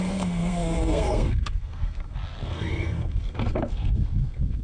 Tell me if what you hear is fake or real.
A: fake